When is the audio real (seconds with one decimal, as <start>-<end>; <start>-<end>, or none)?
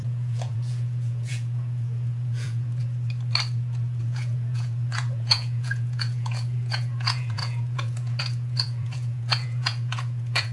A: 2.8-4.0